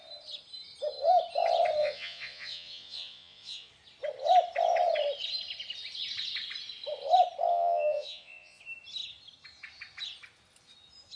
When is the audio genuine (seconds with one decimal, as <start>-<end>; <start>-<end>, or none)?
0.0-1.8; 3.7-7.5; 8.6-11.2